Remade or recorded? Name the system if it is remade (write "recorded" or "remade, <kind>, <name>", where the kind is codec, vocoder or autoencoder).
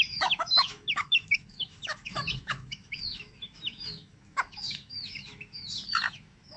remade, autoencoder, DAC-VAE